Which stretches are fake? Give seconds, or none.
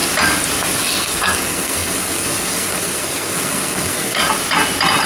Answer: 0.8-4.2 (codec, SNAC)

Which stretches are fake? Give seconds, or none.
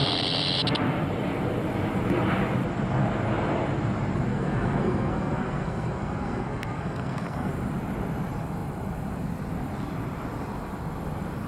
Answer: 4.3-7.5 (codec, SNAC)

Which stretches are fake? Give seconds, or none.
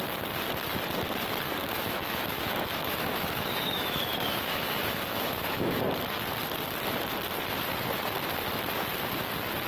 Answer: 1.6-5.8 (autoencoder, DAC-VAE)